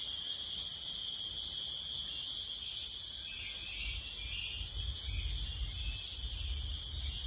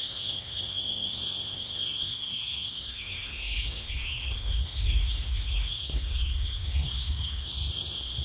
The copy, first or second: second